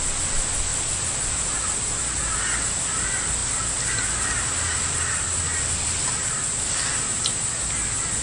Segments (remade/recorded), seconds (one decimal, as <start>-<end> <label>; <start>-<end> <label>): 0.0-8.2 recorded